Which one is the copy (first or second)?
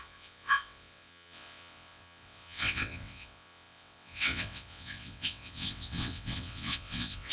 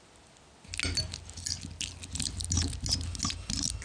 first